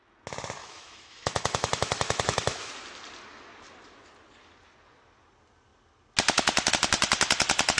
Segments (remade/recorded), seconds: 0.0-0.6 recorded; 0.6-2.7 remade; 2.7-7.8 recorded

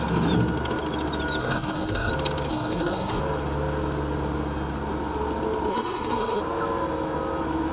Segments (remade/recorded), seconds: 0.0-1.4 recorded; 1.4-2.1 remade; 2.1-2.5 recorded; 2.5-3.2 remade; 3.2-5.7 recorded; 5.7-6.4 remade; 6.4-7.7 recorded

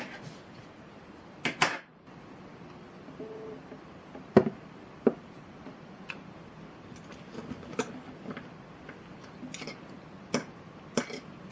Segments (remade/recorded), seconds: 0.0-11.5 recorded

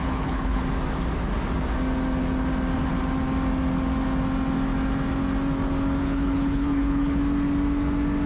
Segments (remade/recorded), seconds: 0.0-0.6 remade; 0.6-6.0 recorded; 6.0-7.2 remade; 7.2-8.3 recorded